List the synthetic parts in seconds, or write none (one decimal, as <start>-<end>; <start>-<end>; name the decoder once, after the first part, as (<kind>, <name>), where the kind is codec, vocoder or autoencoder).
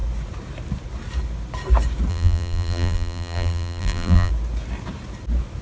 2.1-4.3 (vocoder, BigVGAN v2)